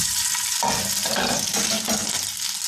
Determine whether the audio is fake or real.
real